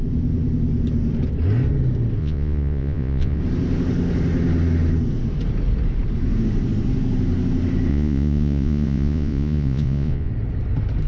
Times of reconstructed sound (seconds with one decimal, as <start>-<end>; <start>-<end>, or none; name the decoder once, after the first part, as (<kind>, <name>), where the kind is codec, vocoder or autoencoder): 2.2-3.4 (vocoder, Vocos); 7.9-10.3

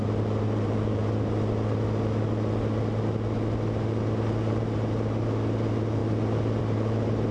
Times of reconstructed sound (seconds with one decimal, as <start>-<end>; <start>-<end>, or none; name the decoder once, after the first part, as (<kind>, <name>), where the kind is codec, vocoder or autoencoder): 0.0-1.0 (vocoder, BigVGAN v2); 4.6-6.0; 6.6-7.3

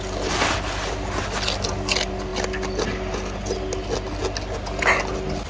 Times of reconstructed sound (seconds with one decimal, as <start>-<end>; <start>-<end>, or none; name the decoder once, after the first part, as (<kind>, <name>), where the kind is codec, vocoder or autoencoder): none

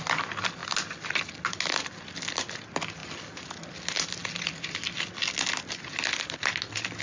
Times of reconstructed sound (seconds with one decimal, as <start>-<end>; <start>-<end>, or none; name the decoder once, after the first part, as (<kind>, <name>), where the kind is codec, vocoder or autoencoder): none

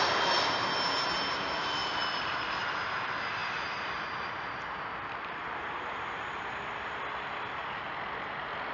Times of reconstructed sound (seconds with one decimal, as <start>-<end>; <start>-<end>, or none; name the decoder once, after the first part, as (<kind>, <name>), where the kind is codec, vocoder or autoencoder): 3.4-4.5 (vocoder, BigVGAN v2); 5.4-6.5

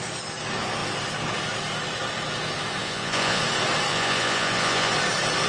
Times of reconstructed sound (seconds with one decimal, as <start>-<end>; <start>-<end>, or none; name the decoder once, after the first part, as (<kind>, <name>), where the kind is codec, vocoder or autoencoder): 2.8-3.4 (vocoder, Vocos); 3.9-4.9

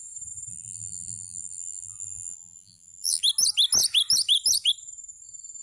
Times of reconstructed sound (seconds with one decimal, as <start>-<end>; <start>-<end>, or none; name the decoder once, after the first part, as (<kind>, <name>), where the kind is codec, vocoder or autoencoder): 0.5-3.2 (vocoder, BigVGAN v2)

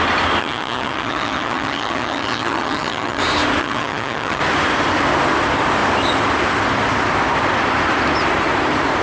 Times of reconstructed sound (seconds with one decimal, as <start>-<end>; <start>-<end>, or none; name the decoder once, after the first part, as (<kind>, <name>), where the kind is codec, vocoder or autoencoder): 0.4-3.2 (vocoder, HiFi-GAN); 3.6-4.4